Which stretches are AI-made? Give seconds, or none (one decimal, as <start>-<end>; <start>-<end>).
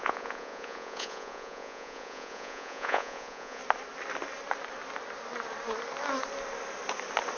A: 0.0-3.6